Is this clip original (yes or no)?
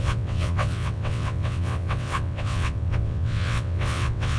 no